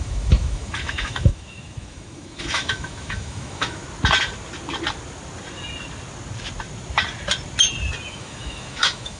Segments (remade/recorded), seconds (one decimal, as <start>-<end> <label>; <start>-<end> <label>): 0.0-3.8 remade; 3.8-8.1 recorded; 8.1-9.2 remade